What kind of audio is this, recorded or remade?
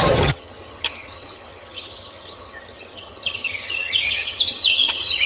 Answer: remade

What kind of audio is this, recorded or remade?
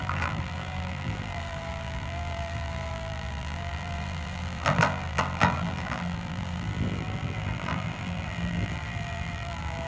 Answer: remade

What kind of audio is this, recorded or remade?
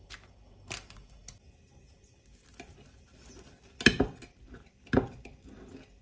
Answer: recorded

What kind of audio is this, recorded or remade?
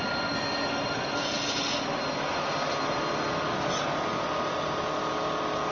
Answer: recorded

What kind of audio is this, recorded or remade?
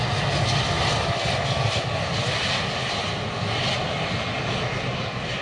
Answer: recorded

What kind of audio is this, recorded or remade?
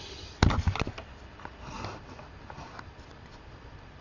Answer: recorded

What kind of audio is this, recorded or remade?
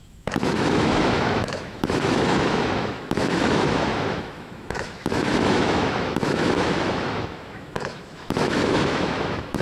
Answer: remade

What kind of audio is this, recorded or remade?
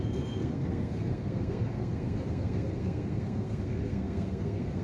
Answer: remade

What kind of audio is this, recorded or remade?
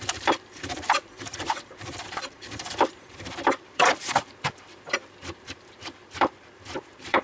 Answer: remade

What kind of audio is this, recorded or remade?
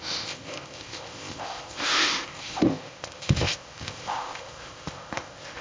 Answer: remade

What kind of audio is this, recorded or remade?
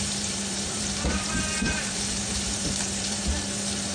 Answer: remade